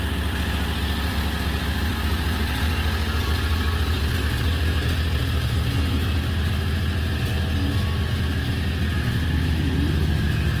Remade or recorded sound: recorded